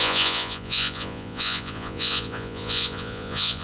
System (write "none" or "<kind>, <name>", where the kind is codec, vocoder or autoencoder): vocoder, Vocos